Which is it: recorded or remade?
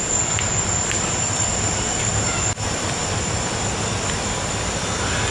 recorded